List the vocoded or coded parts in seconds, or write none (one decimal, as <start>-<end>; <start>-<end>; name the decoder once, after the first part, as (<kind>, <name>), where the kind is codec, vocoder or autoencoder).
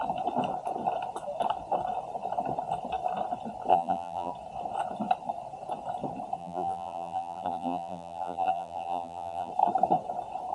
3.7-4.3 (vocoder, BigVGAN v2); 6.4-9.5